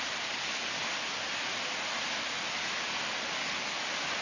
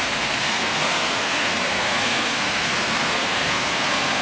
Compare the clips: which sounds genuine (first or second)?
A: first